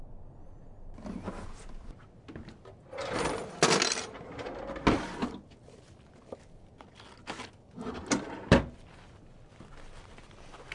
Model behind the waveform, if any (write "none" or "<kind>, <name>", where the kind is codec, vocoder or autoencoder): none